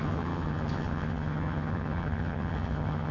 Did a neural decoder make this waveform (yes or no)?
yes